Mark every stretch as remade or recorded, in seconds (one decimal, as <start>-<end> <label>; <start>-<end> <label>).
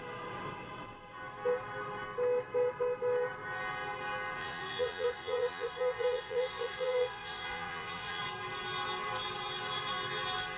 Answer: 0.0-4.4 recorded; 4.4-8.2 remade; 8.2-10.6 recorded